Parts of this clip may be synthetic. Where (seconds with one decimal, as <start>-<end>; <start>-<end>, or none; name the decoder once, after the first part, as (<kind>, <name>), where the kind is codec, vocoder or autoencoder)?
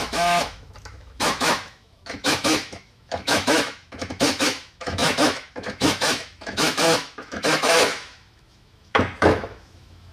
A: 0.0-10.1 (autoencoder, DAC-VAE)